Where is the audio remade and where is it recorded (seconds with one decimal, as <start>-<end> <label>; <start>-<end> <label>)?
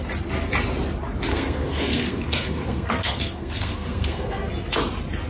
0.0-1.3 recorded; 1.3-4.5 remade; 4.5-5.3 recorded